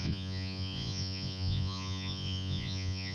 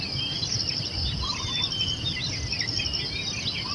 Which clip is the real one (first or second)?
second